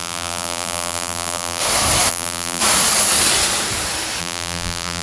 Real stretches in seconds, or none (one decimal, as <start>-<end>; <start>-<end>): 1.6-2.1; 2.6-4.2

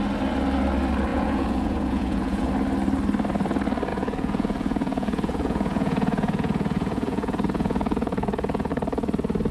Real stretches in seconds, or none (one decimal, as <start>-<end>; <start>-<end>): 0.0-1.1; 2.5-3.9; 8.7-9.5

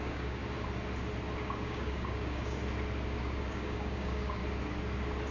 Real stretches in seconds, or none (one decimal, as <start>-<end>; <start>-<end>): 0.4-1.4; 2.6-3.2; 4.4-5.3